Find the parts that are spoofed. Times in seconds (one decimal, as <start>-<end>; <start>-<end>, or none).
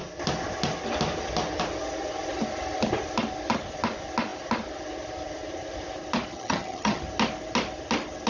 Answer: 6.3-7.0